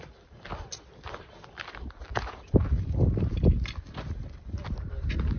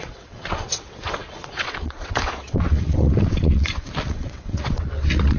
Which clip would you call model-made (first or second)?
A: second